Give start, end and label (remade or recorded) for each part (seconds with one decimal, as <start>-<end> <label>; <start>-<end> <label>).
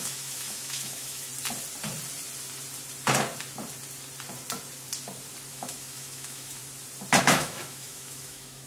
0.0-1.3 remade; 1.3-5.5 recorded; 5.5-6.6 remade; 6.6-7.2 recorded; 7.2-8.7 remade